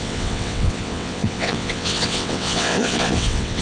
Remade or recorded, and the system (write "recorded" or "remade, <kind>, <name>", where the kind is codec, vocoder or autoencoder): remade, vocoder, WaveNeXt